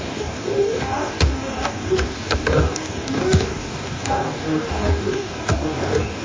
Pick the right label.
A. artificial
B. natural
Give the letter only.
A